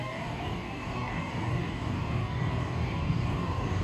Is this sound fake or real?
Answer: fake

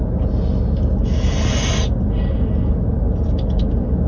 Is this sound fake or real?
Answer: real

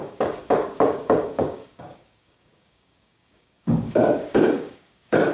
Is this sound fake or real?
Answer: fake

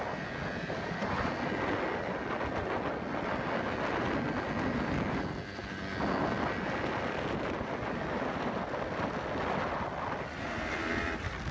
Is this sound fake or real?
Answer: real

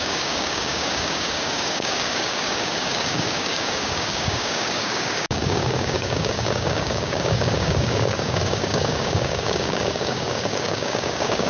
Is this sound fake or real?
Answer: fake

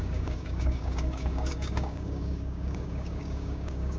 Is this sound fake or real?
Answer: fake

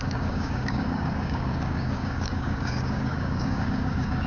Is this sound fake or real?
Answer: fake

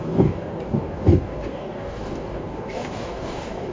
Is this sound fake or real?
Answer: fake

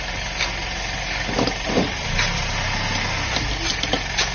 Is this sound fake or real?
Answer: real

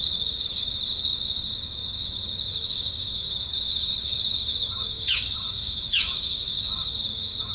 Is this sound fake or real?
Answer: fake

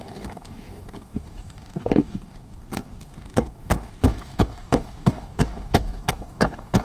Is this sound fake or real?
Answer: fake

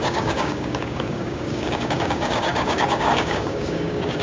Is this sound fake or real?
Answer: fake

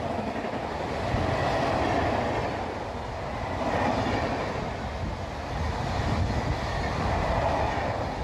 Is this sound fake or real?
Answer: real